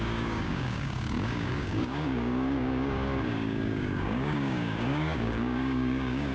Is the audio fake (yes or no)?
yes